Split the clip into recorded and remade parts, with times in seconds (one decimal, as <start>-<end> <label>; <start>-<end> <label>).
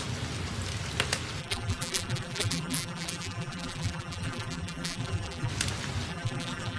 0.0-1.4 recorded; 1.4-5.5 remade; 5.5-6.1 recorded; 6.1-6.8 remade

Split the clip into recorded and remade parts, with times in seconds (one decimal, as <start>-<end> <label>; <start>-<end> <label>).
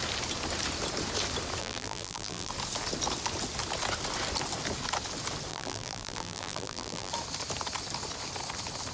0.0-1.6 recorded; 1.6-2.5 remade; 2.5-5.5 recorded; 5.5-7.1 remade; 7.1-8.9 recorded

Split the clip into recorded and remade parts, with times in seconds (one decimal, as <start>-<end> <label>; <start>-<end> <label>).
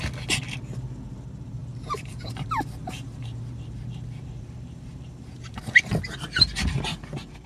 0.0-1.6 recorded; 1.6-5.6 remade; 5.6-7.5 recorded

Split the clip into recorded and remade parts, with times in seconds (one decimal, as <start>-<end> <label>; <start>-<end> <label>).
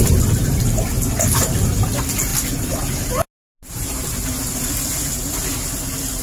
0.0-0.4 recorded; 0.4-1.5 remade; 1.5-6.2 recorded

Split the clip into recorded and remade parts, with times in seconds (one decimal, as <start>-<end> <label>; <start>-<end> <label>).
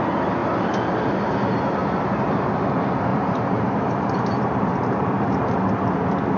0.0-3.1 recorded; 3.1-5.7 remade; 5.7-6.4 recorded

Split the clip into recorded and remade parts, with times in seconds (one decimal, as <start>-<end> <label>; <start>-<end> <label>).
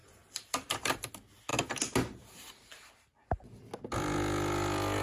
0.0-1.1 remade; 1.1-5.0 recorded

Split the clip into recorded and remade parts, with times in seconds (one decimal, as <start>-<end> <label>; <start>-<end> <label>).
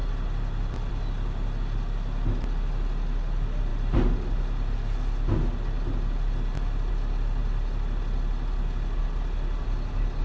0.0-0.9 remade; 0.9-7.4 recorded; 7.4-10.2 remade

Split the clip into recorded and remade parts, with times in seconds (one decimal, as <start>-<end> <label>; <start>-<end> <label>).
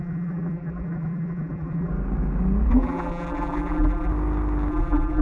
0.0-1.9 remade; 1.9-2.7 recorded; 2.7-4.1 remade; 4.1-4.7 recorded; 4.7-5.2 remade